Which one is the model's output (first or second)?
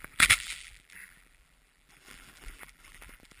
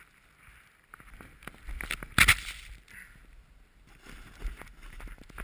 first